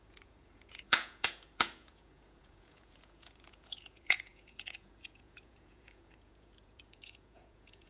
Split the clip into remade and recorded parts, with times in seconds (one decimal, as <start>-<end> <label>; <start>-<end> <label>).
0.0-7.9 remade